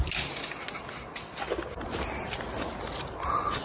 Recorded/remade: recorded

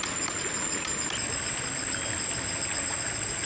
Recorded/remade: recorded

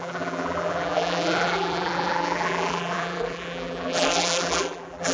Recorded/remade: remade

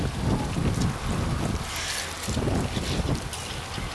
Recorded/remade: recorded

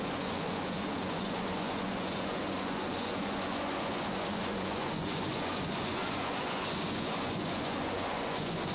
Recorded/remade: remade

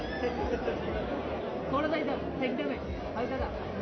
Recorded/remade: recorded